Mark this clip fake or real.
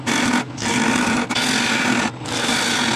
real